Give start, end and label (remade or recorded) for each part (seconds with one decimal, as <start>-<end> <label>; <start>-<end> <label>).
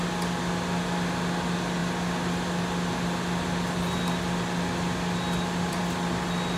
0.0-6.6 recorded